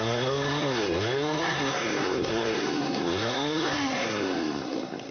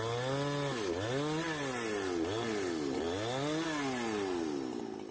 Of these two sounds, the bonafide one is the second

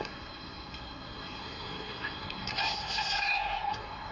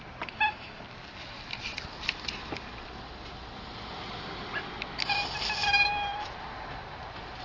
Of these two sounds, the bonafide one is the second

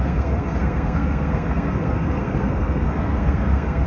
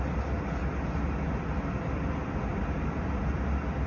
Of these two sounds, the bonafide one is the second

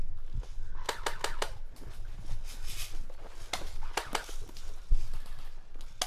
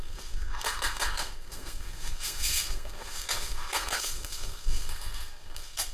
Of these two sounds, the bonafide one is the first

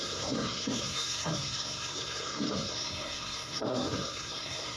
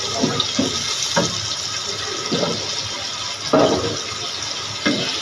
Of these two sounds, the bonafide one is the second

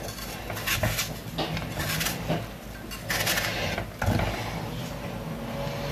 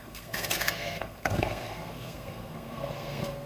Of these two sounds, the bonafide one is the first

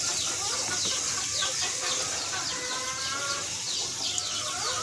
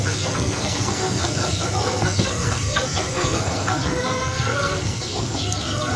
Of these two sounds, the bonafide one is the first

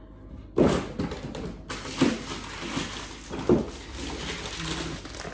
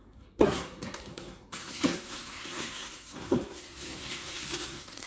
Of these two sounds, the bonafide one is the first